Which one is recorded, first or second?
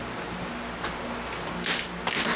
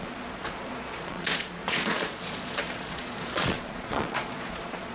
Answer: first